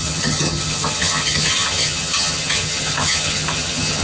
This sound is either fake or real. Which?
fake